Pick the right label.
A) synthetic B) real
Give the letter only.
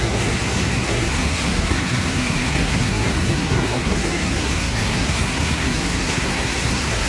A